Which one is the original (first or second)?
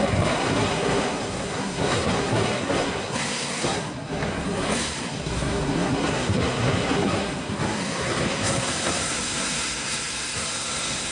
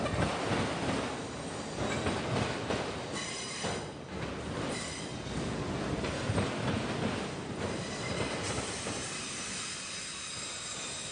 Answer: second